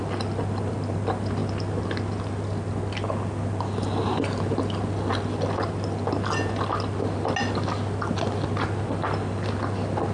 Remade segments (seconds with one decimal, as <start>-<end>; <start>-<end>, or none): none